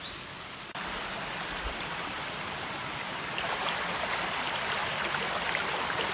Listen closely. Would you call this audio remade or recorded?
recorded